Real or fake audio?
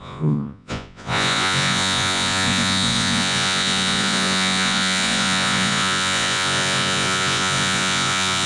fake